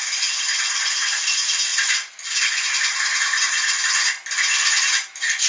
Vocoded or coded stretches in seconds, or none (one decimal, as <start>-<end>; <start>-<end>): 0.0-4.2; 4.9-5.5